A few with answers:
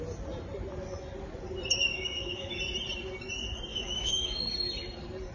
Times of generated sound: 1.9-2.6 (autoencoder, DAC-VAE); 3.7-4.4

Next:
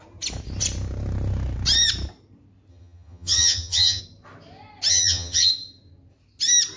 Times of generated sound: 2.7-4.0 (vocoder, HiFi-GAN); 4.9-5.5

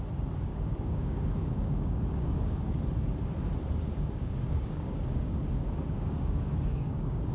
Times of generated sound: 0.5-2.8 (codec, DAC); 3.9-7.3

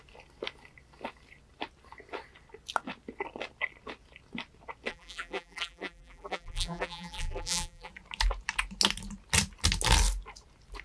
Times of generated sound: 4.9-7.9 (vocoder, BigVGAN v2)

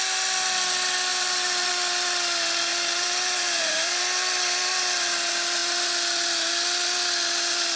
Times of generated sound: 1.1-1.7 (vocoder, BigVGAN v2); 2.7-4.0